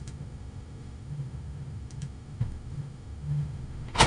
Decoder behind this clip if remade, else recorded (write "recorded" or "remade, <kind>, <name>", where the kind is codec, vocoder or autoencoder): remade, autoencoder, DAC-VAE